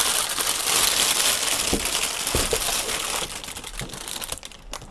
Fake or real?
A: real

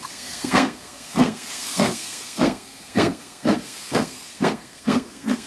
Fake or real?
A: fake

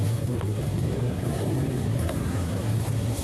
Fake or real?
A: fake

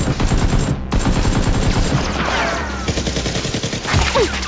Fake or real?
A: real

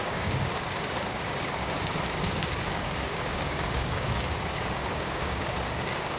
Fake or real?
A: fake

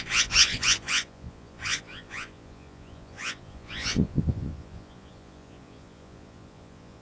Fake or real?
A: fake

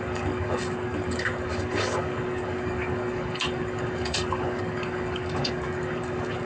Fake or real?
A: fake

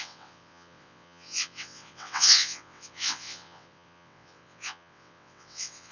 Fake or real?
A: fake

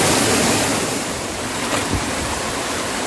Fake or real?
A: real